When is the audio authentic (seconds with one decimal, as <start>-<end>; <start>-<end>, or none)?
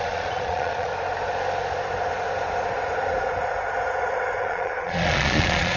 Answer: 0.9-4.4